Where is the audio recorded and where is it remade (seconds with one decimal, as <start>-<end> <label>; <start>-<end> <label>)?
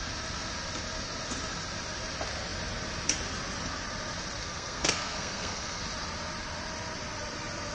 0.0-4.4 recorded; 4.4-5.8 remade; 5.8-7.7 recorded